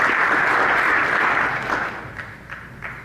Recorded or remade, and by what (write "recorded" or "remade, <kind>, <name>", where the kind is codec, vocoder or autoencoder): recorded